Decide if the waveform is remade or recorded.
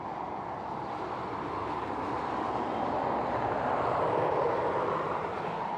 recorded